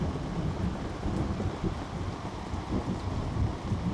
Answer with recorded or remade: recorded